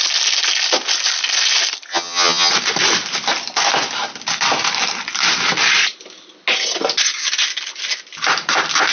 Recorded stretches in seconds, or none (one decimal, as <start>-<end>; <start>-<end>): 0.0-1.9; 2.5-8.9